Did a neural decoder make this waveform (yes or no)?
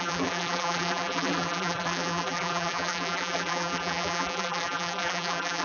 yes